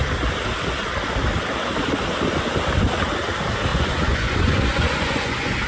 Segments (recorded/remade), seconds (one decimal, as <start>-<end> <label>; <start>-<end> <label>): 0.0-3.7 recorded; 3.7-5.7 remade

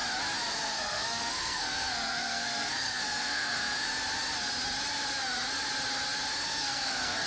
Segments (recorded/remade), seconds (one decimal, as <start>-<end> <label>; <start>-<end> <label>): 0.0-0.5 recorded; 0.5-3.9 remade; 3.9-6.5 recorded; 6.5-7.3 remade

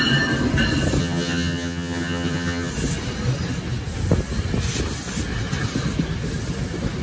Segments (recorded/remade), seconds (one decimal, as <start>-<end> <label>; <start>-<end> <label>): 0.0-1.0 recorded; 1.0-2.7 remade; 2.7-7.0 recorded